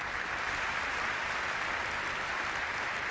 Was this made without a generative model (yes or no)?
yes